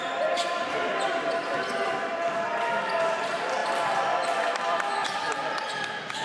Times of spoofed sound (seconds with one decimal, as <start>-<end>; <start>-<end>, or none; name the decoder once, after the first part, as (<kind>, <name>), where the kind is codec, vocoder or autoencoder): 0.0-1.4 (vocoder, BigVGAN v2); 2.1-2.5; 3.0-3.6; 4.1-6.2